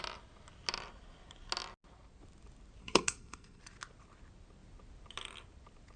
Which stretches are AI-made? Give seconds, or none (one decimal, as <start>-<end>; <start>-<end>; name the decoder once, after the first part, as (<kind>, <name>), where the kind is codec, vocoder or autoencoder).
2.8-3.6 (codec, SNAC)